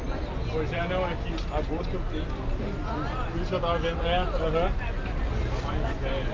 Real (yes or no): yes